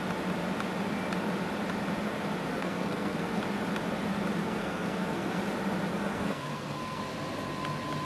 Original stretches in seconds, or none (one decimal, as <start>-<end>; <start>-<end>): 0.0-2.5; 3.4-4.4; 5.4-5.9; 7.0-8.0